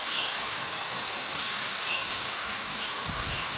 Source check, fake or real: fake